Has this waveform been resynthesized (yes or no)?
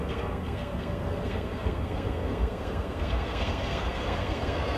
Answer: yes